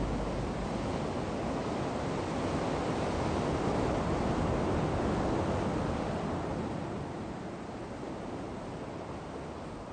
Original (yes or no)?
yes